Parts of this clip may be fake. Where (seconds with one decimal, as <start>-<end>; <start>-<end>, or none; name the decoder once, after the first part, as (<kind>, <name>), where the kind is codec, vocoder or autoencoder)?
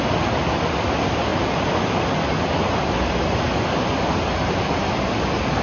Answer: none